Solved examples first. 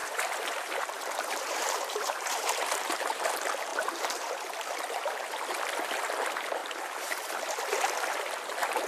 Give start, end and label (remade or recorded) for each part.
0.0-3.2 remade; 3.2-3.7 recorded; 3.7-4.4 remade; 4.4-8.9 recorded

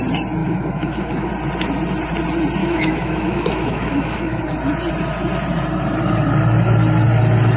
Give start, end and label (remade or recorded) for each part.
0.0-0.4 recorded; 0.4-1.3 remade; 1.3-2.6 recorded; 2.6-4.4 remade; 4.4-7.6 recorded